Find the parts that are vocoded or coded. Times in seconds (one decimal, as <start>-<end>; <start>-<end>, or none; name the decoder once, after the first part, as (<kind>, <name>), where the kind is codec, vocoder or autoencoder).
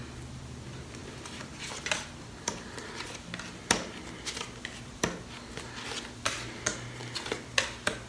1.0-1.6 (vocoder, BigVGAN v2)